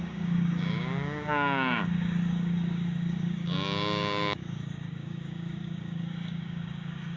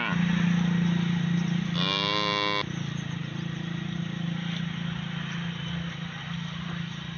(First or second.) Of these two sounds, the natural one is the second